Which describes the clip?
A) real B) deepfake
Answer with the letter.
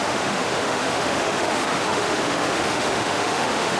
B